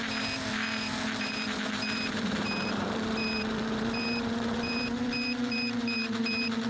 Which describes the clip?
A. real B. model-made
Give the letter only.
B